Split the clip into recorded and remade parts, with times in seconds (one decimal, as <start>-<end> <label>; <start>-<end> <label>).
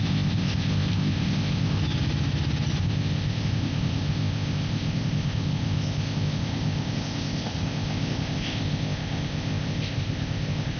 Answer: 0.0-1.8 remade; 1.8-2.8 recorded; 2.8-10.8 remade